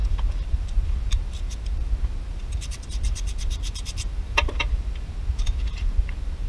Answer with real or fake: fake